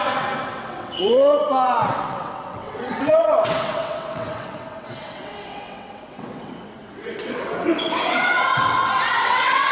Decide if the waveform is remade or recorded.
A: remade